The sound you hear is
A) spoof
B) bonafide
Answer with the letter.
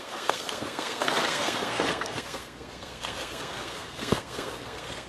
A